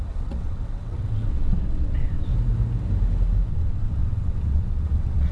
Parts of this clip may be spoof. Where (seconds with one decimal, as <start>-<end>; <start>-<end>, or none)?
0.0-2.3; 3.5-5.3